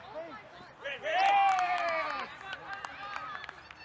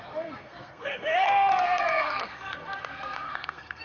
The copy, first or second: second